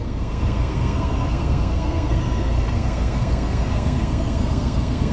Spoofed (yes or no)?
yes